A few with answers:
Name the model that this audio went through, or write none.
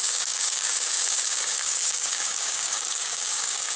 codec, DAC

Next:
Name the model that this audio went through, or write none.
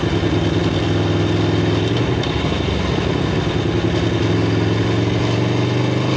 none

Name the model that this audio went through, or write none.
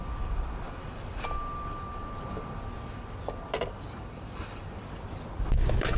none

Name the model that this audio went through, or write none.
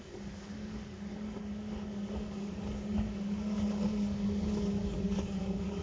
codec, DAC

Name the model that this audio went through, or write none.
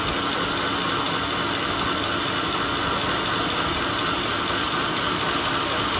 none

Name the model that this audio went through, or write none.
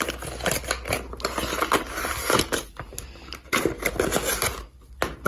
none